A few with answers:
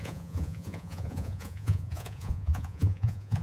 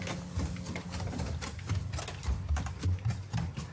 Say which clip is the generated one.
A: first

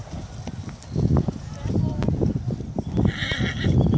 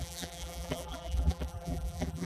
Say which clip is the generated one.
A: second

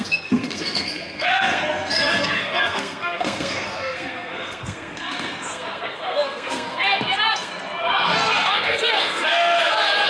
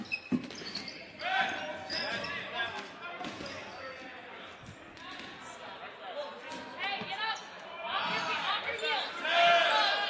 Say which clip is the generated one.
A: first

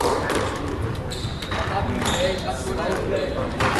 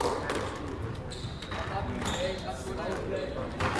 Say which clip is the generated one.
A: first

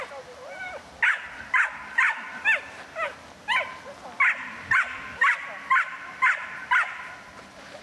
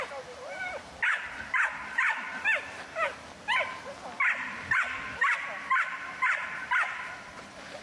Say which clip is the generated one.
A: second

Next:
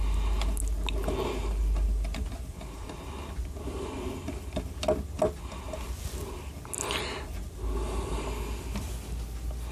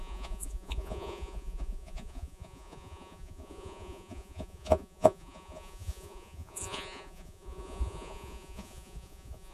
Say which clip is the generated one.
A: second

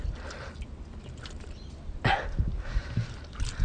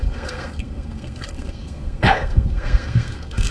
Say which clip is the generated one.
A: second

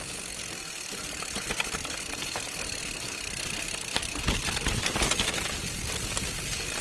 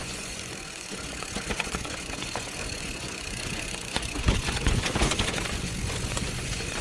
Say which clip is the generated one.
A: second